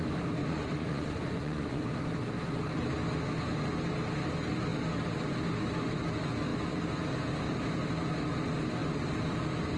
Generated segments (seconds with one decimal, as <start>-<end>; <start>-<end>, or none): 0.4-1.8